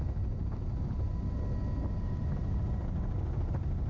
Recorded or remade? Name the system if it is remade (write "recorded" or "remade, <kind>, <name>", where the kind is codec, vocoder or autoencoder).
recorded